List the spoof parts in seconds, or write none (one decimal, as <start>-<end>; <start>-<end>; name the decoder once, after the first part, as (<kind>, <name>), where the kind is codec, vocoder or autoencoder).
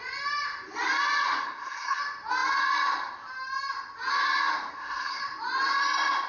1.4-2.0 (codec, SNAC); 4.7-5.2